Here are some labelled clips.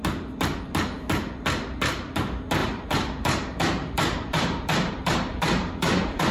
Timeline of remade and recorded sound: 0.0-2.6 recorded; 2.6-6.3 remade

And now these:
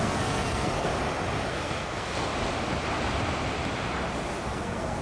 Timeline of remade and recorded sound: 0.0-0.9 remade; 0.9-1.5 recorded; 1.5-2.3 remade; 2.3-4.5 recorded; 4.5-5.0 remade

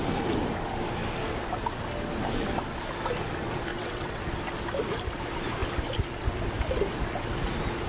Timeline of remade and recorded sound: 0.0-3.7 recorded; 3.7-4.2 remade; 4.2-7.9 recorded

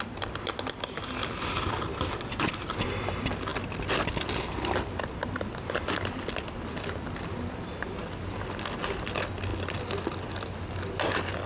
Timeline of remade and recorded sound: 0.0-11.5 recorded

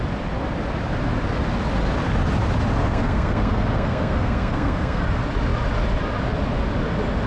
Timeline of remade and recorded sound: 0.0-2.8 recorded; 2.8-5.0 remade; 5.0-7.3 recorded

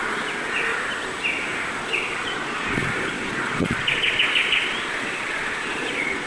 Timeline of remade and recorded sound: 0.0-0.7 remade; 0.7-1.7 recorded; 1.7-6.3 remade

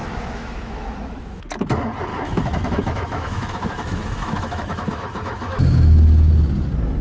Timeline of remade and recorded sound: 0.0-1.5 remade; 1.5-2.1 recorded; 2.1-6.3 remade; 6.3-7.0 recorded

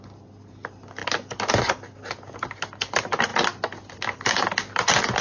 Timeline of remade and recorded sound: 0.0-5.2 recorded